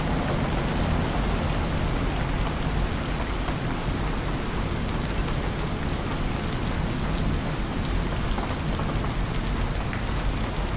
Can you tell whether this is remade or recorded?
recorded